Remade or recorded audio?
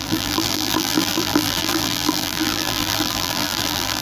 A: remade